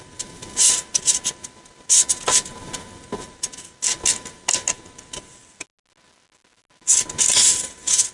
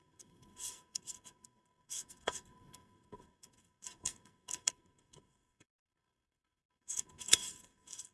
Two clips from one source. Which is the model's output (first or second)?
second